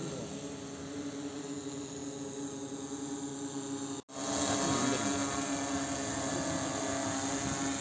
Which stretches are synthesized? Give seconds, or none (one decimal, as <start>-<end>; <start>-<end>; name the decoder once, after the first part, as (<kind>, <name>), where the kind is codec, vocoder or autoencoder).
none